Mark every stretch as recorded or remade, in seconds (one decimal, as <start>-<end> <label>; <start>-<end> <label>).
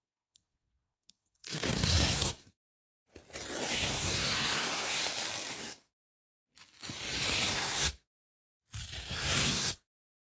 0.0-2.6 remade; 2.6-3.7 recorded; 3.7-5.0 remade; 5.0-5.5 recorded; 5.5-6.0 remade; 6.0-7.5 recorded; 7.5-8.4 remade; 8.4-9.0 recorded; 9.0-10.2 remade